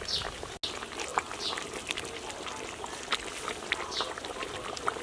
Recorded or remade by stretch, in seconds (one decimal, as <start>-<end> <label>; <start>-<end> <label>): 0.0-5.0 recorded